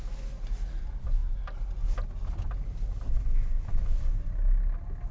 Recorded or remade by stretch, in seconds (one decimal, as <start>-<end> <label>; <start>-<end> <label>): 0.0-5.1 recorded